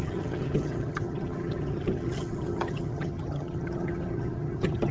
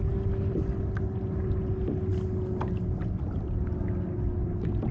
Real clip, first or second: second